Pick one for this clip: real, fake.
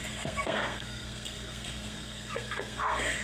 fake